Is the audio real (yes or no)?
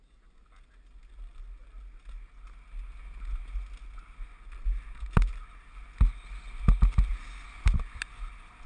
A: yes